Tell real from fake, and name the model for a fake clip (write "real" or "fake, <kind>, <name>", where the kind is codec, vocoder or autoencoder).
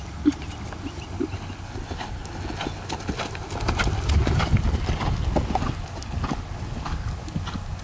real